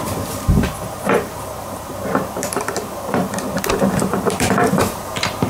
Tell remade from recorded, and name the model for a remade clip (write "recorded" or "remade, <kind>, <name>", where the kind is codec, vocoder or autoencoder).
remade, vocoder, BigVGAN v2